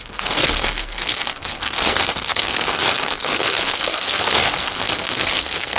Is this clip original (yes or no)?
no